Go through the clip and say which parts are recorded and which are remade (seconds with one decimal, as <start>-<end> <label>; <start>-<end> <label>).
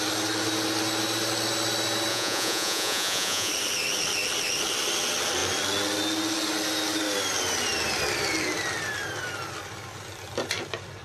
0.0-2.1 recorded; 2.1-3.5 remade; 3.5-11.0 recorded